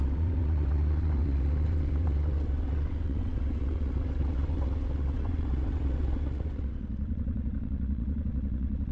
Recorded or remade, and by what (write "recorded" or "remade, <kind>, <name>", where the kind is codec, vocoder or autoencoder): remade, vocoder, WaveNeXt